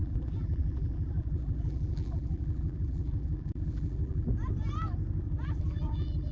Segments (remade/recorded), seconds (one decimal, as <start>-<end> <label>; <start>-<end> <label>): 0.0-4.3 remade; 4.3-5.2 recorded; 5.2-6.3 remade